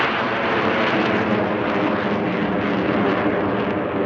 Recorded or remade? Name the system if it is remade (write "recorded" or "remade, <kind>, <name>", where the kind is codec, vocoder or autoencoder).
recorded